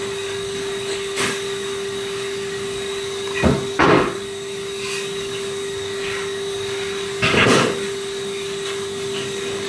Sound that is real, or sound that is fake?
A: fake